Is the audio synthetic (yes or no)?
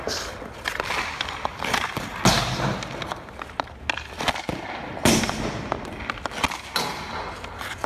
no